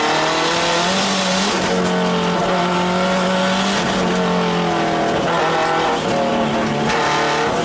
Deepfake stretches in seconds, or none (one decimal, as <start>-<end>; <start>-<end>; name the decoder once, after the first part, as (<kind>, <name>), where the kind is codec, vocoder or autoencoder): none